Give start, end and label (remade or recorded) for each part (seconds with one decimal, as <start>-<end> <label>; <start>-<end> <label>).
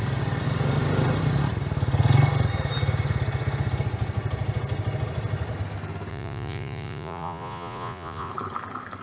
0.0-6.1 recorded; 6.1-8.3 remade; 8.3-9.0 recorded